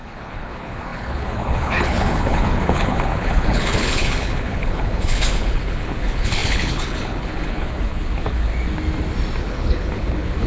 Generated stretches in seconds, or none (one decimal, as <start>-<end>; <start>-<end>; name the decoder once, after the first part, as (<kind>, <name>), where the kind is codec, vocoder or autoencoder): 0.0-8.5 (codec, HILCodec); 9.4-10.5